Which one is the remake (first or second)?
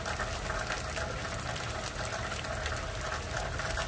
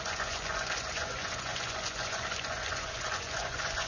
second